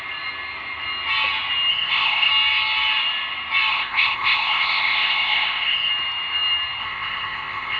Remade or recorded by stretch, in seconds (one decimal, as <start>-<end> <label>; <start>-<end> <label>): 0.0-1.7 recorded; 1.7-2.3 remade; 2.3-3.7 recorded; 3.7-5.9 remade; 5.9-6.8 recorded; 6.8-7.8 remade